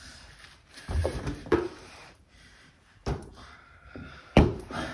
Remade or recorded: remade